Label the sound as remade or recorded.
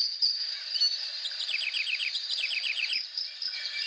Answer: remade